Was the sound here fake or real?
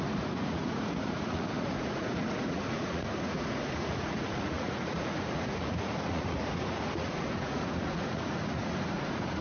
fake